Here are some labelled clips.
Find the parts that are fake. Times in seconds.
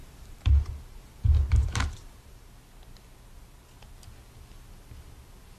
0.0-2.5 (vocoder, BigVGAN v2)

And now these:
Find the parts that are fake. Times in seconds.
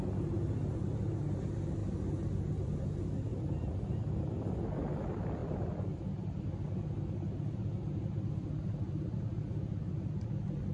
none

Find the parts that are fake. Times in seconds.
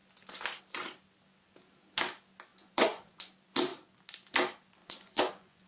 2.5-3.3 (vocoder, Vocos); 4.8-5.7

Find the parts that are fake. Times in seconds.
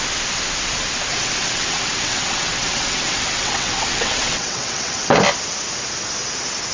1.1-5.1 (vocoder, WaveNeXt)